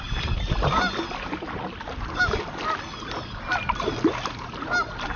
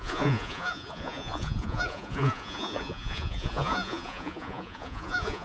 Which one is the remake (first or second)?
second